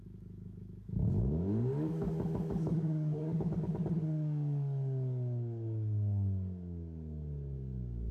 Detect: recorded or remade remade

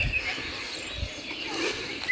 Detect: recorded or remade recorded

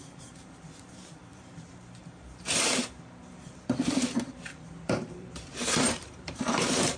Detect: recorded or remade remade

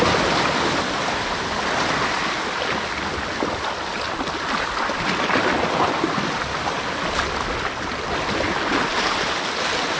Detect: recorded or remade recorded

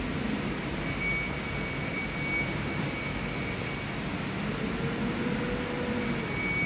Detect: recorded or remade recorded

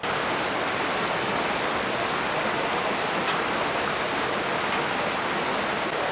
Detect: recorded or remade recorded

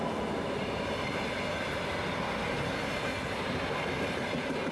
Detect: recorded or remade recorded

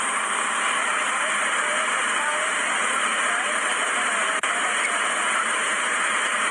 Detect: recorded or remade remade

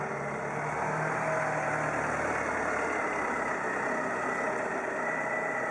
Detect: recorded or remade recorded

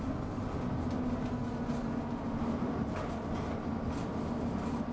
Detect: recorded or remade recorded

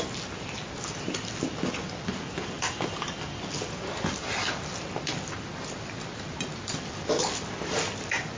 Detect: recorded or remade recorded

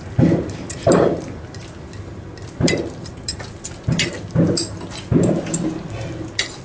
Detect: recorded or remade recorded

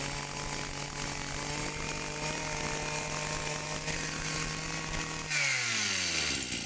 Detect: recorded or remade recorded